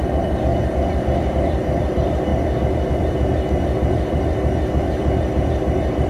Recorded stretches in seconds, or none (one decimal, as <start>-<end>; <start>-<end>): 0.5-1.3; 2.3-2.9